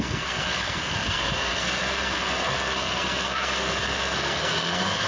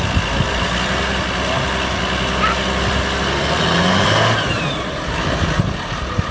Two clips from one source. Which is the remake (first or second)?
first